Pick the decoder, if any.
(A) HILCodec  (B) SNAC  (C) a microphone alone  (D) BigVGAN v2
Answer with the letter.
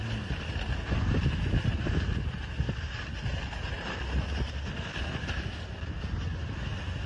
C